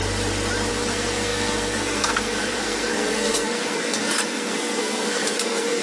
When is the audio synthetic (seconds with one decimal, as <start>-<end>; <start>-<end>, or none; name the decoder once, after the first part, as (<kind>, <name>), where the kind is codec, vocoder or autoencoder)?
0.7-5.8 (codec, SNAC)